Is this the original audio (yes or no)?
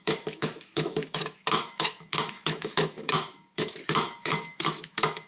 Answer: no